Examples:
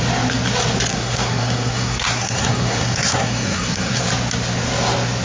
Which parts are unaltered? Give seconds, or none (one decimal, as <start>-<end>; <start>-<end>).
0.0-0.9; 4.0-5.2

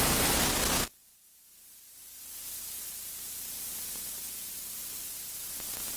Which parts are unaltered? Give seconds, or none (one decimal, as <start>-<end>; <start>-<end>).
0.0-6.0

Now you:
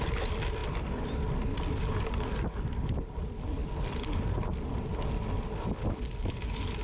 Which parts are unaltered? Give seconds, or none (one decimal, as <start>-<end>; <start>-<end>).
0.0-6.8

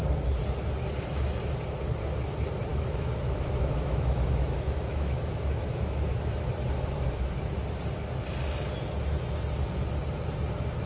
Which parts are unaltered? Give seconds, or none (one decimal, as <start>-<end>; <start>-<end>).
0.0-2.7; 6.5-10.9

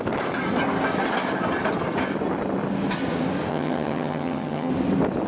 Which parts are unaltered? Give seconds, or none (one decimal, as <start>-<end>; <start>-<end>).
0.0-3.5; 4.7-5.3

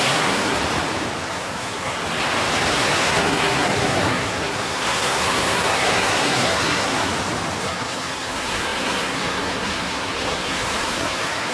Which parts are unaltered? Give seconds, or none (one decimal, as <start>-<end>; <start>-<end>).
0.6-1.3; 2.0-2.7; 7.1-7.6

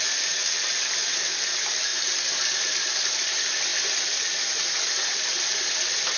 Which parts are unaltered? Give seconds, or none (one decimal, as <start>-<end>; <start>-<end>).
0.0-6.2